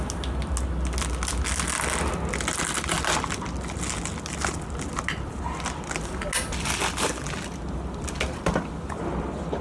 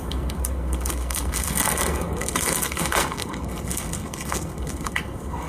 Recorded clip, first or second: first